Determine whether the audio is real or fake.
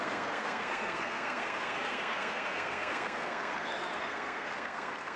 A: fake